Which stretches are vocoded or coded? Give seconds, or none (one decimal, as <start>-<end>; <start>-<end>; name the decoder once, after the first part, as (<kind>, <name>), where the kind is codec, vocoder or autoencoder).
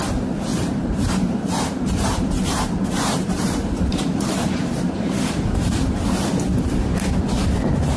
0.5-5.3 (vocoder, BigVGAN v2)